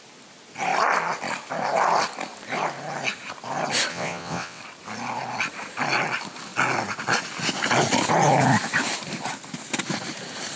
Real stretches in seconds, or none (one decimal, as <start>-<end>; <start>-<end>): 0.0-3.9; 4.6-10.6